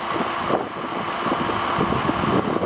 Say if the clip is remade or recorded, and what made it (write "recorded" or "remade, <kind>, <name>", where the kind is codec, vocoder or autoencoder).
recorded